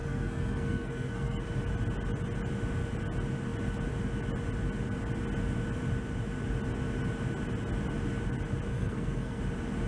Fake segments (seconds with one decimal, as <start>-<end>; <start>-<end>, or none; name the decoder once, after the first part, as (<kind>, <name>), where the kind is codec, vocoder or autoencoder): 0.0-1.4 (codec, SNAC); 8.7-9.4